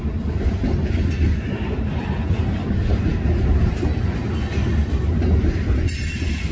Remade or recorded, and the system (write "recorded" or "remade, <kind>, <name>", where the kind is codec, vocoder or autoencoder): recorded